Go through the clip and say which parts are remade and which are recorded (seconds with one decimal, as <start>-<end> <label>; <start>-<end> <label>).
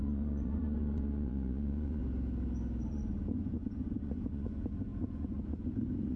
0.0-2.0 remade; 2.0-2.9 recorded; 2.9-6.2 remade